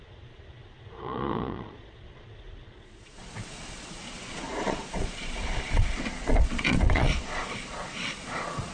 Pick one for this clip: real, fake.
fake